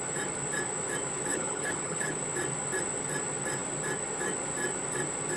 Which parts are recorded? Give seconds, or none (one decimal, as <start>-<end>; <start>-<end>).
0.0-1.3; 2.2-5.4